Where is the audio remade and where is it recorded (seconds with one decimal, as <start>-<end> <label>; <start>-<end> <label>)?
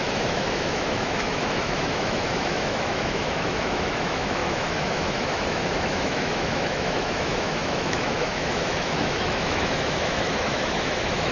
0.0-11.3 remade